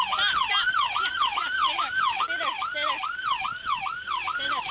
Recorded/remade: recorded